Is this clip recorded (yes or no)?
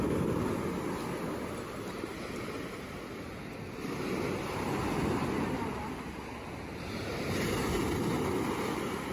yes